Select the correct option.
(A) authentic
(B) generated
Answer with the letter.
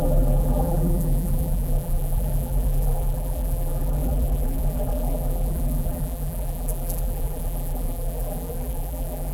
B